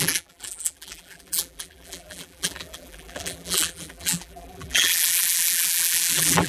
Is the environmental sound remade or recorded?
remade